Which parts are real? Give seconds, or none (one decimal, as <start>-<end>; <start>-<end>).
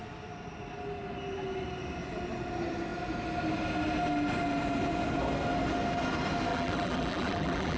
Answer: 0.0-6.5